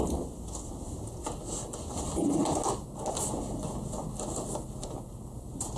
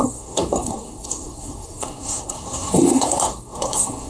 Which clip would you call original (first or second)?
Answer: first